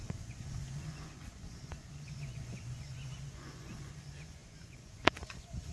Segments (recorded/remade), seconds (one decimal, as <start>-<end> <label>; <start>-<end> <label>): 0.0-5.7 remade

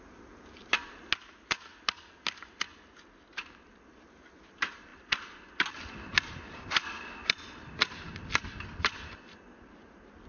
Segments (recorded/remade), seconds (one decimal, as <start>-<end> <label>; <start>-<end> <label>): 0.0-10.3 recorded

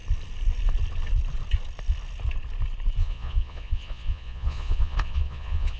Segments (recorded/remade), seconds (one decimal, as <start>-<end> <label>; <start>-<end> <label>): 0.0-3.0 recorded; 3.0-5.8 remade

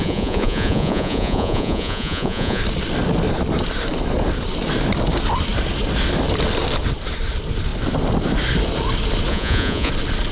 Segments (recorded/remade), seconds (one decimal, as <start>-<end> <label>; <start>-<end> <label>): 0.0-2.6 remade; 2.6-9.3 recorded; 9.3-9.9 remade; 9.9-10.3 recorded

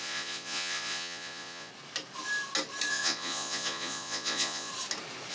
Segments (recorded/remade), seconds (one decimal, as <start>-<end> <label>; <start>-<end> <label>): 0.0-1.7 remade; 1.7-2.9 recorded; 2.9-4.7 remade; 4.7-5.3 recorded